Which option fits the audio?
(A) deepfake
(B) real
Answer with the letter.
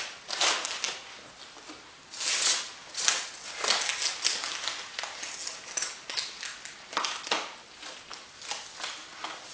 B